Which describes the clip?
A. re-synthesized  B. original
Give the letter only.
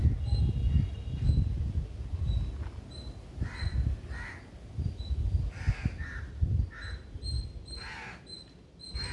B